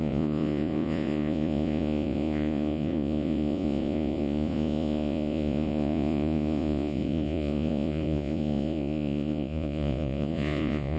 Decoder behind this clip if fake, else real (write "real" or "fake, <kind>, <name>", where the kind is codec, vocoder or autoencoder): fake, vocoder, Vocos